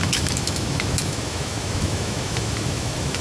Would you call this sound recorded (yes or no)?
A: no